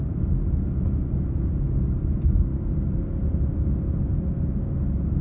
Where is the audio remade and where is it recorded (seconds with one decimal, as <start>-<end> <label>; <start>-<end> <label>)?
0.0-5.2 recorded